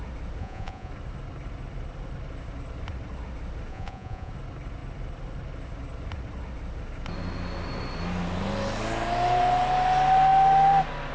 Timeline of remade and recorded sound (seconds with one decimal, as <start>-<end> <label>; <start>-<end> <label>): 0.0-0.4 recorded; 0.4-0.9 remade; 0.9-3.7 recorded; 3.7-4.3 remade; 4.3-11.1 recorded